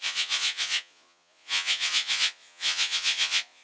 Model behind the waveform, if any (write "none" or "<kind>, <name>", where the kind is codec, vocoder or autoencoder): vocoder, Vocos